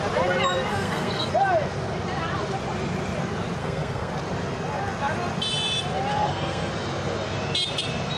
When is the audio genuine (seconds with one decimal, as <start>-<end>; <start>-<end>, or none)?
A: 0.0-0.7; 1.3-3.6; 4.1-6.1; 6.7-8.2